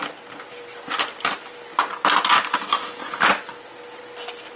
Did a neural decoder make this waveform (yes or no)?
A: no